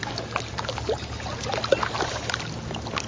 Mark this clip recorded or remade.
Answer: recorded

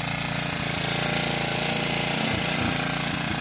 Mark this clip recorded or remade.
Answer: recorded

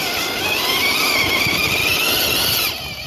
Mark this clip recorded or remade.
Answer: recorded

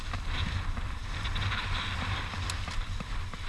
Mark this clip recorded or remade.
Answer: recorded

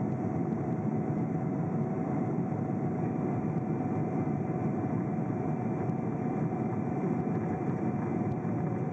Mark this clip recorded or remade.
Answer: remade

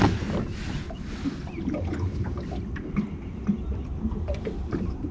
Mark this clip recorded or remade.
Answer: recorded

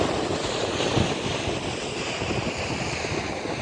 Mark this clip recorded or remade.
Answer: recorded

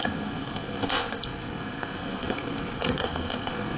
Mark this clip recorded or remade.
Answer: remade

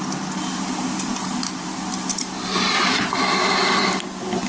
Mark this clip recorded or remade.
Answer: recorded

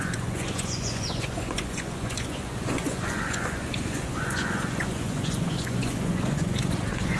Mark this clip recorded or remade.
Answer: remade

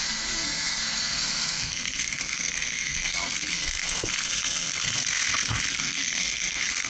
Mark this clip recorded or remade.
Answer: remade